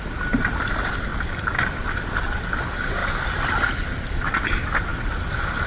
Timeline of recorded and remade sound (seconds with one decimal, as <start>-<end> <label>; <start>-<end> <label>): 0.0-1.1 recorded; 1.1-2.2 remade; 2.2-4.9 recorded; 4.9-5.7 remade